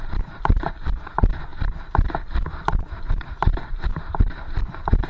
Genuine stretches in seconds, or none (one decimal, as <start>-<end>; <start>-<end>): 0.0-5.1